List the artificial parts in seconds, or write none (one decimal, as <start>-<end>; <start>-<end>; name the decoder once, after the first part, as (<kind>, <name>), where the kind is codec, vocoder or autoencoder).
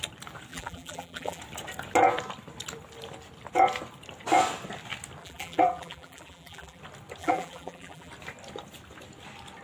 0.5-1.4 (vocoder, BigVGAN v2); 5.2-6.8; 7.2-8.1